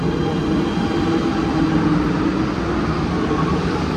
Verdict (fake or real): real